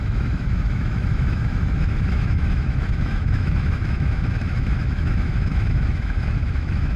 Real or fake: fake